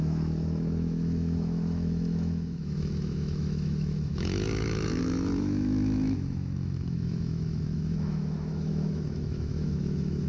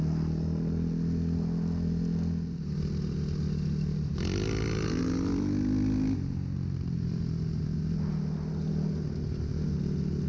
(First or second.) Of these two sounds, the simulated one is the first